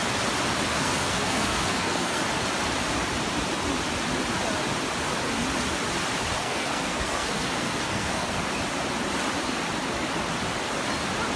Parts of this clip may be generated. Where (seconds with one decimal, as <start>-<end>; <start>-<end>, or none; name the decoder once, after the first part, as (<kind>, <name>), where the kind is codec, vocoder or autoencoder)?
0.7-2.2 (codec, SNAC); 6.4-8.5